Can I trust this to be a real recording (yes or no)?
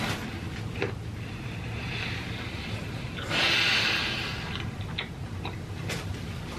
yes